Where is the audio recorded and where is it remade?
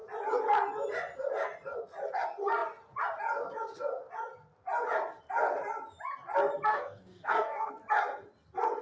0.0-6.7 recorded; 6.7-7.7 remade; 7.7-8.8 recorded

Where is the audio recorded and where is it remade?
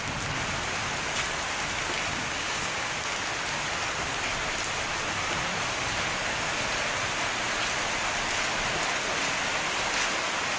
0.0-2.1 recorded; 2.1-2.9 remade; 2.9-10.6 recorded